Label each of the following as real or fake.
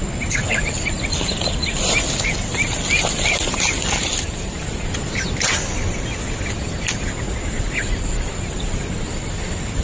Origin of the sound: real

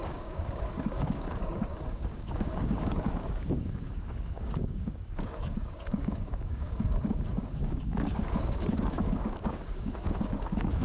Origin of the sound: fake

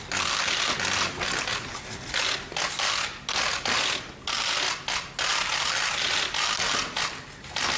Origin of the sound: real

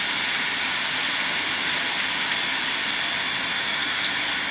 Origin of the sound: real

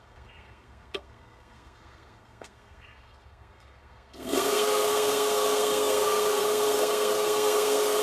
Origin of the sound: fake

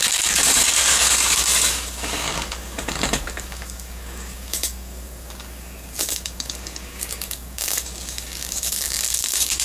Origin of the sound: fake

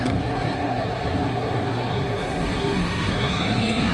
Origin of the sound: fake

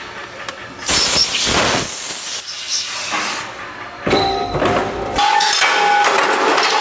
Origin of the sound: real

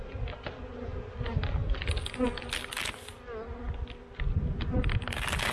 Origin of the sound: real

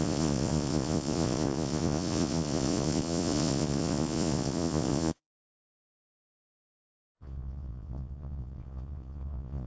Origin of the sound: fake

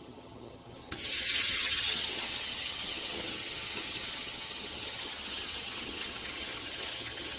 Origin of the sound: fake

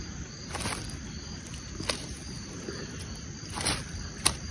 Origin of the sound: real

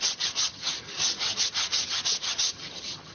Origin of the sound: fake